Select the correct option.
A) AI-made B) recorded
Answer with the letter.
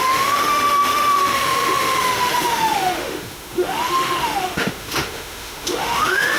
A